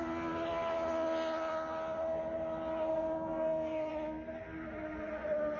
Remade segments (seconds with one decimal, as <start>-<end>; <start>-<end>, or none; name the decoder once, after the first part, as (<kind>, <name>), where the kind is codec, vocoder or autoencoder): 2.9-3.9 (codec, SNAC)